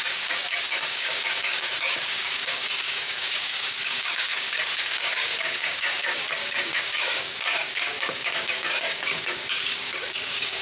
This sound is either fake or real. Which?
fake